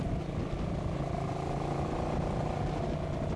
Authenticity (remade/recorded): recorded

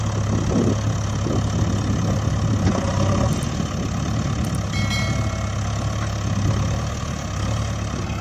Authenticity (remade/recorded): recorded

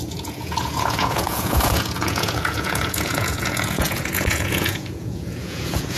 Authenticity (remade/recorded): remade